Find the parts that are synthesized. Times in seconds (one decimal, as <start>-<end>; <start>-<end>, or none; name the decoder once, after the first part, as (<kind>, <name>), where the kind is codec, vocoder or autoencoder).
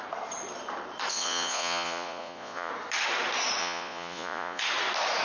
1.1-2.7 (vocoder, Vocos); 3.6-4.6